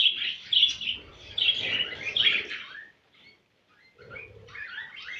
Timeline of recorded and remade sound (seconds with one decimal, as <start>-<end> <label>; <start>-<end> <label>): 0.0-5.2 recorded

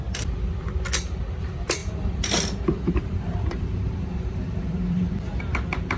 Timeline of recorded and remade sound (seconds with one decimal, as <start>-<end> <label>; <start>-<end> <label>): 0.0-1.8 recorded; 1.8-5.4 remade; 5.4-6.0 recorded